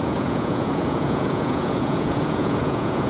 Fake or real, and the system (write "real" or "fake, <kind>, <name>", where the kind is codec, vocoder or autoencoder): fake, vocoder, Vocos